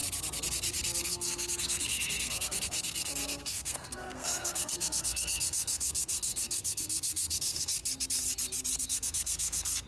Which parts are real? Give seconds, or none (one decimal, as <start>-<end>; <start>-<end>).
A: 0.0-1.0; 7.8-8.8